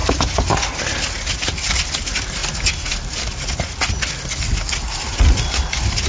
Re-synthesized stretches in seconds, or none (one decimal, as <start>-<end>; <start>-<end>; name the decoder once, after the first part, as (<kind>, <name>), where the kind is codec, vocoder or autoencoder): none